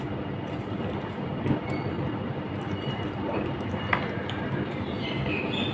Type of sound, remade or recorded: recorded